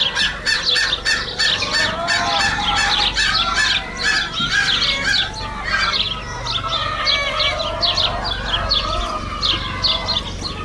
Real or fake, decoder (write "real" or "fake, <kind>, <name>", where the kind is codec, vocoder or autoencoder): real